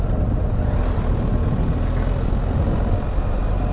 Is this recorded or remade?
recorded